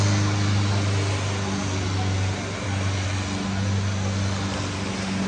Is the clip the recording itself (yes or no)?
yes